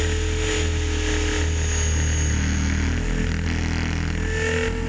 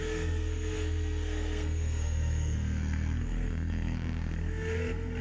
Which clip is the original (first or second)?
first